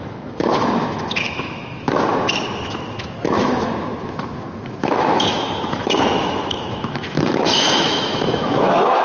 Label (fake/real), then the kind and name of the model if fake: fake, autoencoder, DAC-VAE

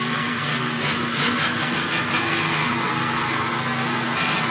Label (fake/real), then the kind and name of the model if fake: fake, codec, SNAC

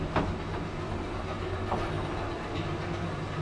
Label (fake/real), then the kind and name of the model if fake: real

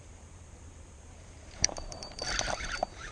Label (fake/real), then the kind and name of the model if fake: fake, vocoder, BigVGAN v2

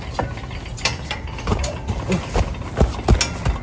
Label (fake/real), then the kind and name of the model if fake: real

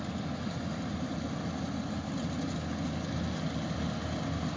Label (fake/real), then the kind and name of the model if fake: real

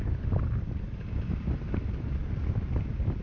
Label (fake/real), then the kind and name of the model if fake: real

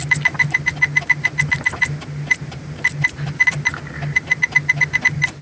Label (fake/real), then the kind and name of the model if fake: real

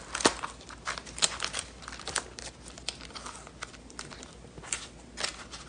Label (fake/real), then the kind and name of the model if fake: real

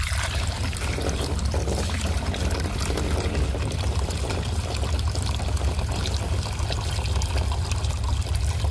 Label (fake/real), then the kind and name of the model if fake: real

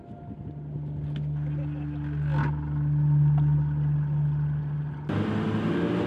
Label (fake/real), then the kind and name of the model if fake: real